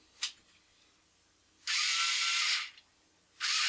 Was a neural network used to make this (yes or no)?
no